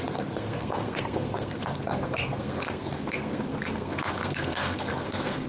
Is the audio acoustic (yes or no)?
no